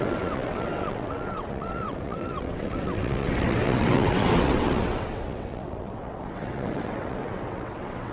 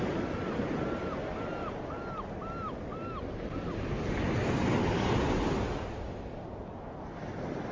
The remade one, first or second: first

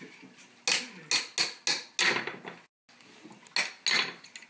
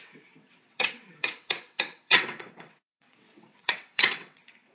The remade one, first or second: second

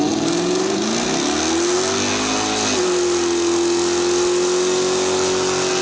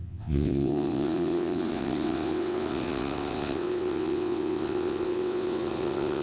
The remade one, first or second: second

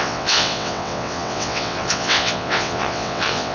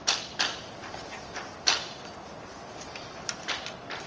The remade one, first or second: first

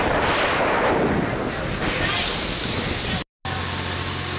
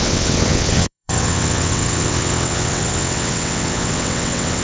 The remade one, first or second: second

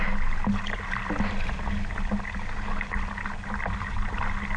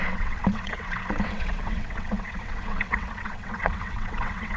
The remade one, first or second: second